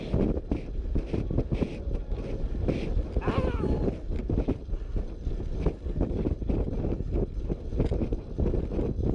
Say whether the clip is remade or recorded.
recorded